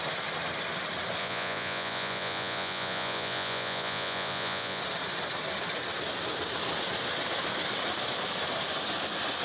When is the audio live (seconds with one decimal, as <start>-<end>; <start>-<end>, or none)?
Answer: 0.0-1.2; 4.8-9.4